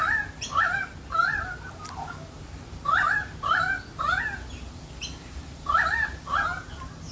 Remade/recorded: recorded